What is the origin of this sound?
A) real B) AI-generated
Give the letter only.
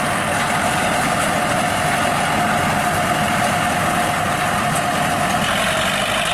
A